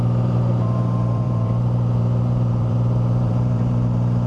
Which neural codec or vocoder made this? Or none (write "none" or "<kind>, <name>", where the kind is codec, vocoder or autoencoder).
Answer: vocoder, BigVGAN v2